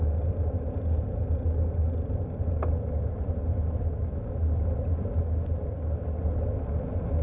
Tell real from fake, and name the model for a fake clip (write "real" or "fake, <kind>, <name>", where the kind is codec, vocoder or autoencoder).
real